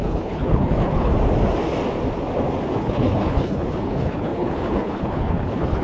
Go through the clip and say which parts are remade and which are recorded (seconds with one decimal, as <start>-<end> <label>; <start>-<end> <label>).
0.0-1.1 remade; 1.1-2.8 recorded; 2.8-5.8 remade